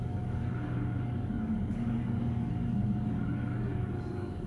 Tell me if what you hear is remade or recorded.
remade